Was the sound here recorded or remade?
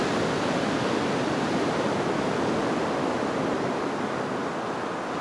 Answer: recorded